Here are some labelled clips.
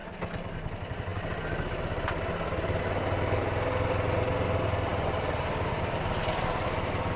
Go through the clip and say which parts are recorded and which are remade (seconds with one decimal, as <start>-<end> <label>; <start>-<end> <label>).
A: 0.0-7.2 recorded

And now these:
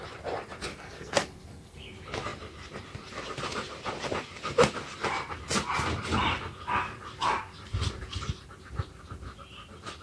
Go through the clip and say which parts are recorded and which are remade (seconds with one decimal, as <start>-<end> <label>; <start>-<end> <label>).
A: 0.0-0.7 recorded; 0.7-1.9 remade; 1.9-10.0 recorded

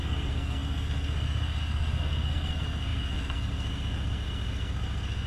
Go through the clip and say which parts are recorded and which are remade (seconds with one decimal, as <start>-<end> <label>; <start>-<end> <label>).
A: 0.0-5.3 remade

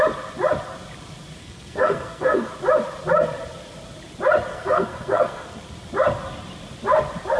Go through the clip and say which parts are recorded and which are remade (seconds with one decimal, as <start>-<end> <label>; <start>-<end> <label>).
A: 0.0-1.4 recorded; 1.4-2.5 remade; 2.5-4.5 recorded; 4.5-5.6 remade; 5.6-7.4 recorded